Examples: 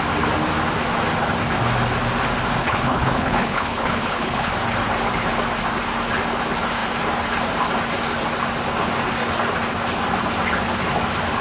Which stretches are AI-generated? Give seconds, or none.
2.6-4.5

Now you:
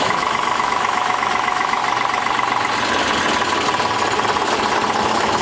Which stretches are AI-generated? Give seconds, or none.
0.0-1.8; 5.0-5.4

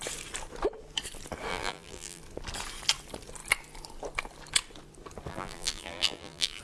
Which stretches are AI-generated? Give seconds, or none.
1.5-2.2; 5.3-6.6

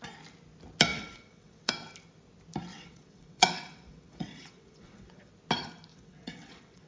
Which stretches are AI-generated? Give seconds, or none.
0.9-1.7; 2.7-5.3; 5.9-6.9

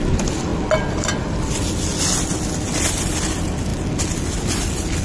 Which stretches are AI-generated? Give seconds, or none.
none

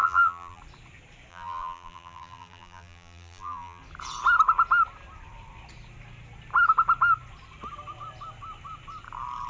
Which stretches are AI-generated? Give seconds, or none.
0.0-0.6; 1.3-3.8